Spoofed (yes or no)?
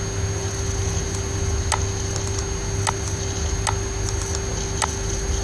no